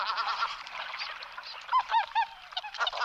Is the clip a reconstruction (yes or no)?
yes